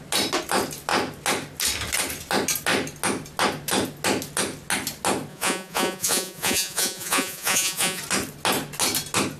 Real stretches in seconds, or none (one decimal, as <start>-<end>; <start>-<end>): 0.0-5.3; 8.0-9.4